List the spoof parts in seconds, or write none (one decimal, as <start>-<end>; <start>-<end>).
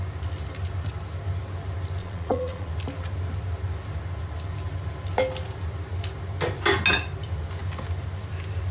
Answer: 2.0-2.7